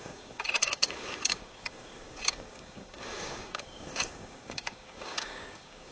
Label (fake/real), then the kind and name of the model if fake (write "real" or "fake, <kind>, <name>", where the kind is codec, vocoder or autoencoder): fake, codec, DAC